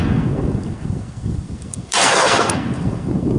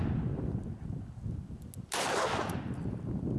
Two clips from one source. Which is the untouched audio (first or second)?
second